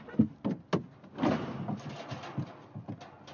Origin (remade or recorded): recorded